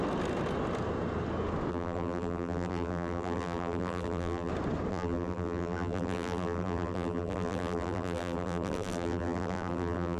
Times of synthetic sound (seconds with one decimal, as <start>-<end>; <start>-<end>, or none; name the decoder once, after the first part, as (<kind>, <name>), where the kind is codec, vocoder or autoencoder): 1.7-4.5 (vocoder, BigVGAN v2); 4.9-10.2